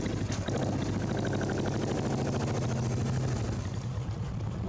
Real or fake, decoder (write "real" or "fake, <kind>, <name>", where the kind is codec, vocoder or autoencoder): real